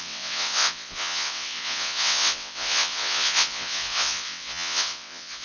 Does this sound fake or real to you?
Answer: fake